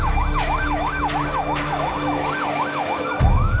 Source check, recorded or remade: remade